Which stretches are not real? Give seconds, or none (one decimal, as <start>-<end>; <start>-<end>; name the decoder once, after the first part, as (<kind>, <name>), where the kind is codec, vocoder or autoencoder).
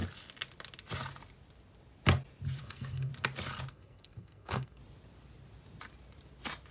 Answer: 2.6-3.1 (codec, SNAC); 3.7-4.8